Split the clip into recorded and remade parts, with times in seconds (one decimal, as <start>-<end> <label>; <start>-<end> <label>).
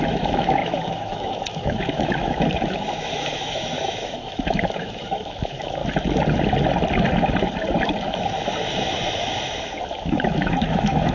0.0-5.8 remade; 5.8-10.0 recorded; 10.0-11.1 remade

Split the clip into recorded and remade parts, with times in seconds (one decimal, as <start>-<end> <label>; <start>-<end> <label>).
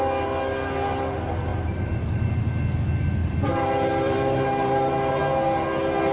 0.0-1.5 recorded; 1.5-2.3 remade; 2.3-3.2 recorded; 3.2-5.2 remade; 5.2-6.1 recorded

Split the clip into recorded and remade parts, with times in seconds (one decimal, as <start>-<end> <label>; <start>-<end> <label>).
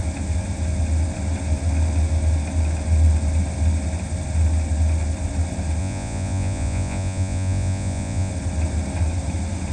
0.0-5.8 recorded; 5.8-8.3 remade; 8.3-9.7 recorded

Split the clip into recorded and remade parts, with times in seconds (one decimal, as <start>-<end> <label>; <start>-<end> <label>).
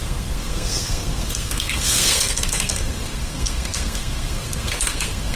0.0-5.3 remade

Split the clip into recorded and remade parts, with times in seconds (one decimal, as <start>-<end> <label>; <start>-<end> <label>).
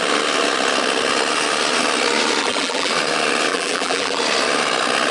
0.0-2.4 recorded; 2.4-2.9 remade; 2.9-3.5 recorded; 3.5-4.2 remade; 4.2-5.1 recorded